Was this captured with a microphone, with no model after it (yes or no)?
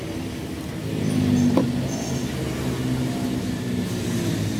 yes